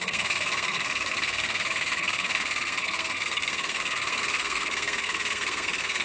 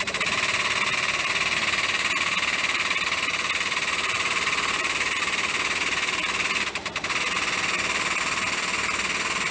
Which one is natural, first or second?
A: second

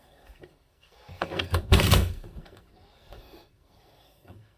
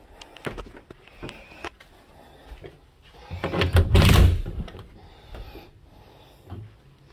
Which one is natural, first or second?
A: second